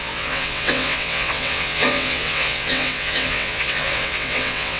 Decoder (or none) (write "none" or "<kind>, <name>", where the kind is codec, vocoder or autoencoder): vocoder, WaveNeXt